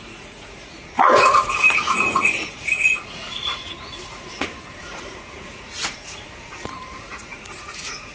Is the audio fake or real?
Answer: fake